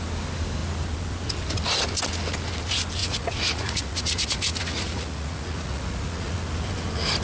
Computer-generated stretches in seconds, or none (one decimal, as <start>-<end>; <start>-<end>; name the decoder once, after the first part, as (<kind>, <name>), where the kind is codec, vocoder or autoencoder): 3.0-6.4 (vocoder, Vocos)